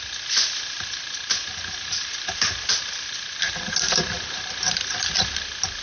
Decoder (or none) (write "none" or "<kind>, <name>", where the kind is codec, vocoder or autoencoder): none